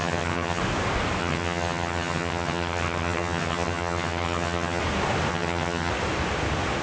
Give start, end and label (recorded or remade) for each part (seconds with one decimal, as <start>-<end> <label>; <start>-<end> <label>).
0.0-0.6 remade; 0.6-1.2 recorded; 1.2-4.8 remade; 4.8-5.3 recorded; 5.3-5.9 remade; 5.9-6.8 recorded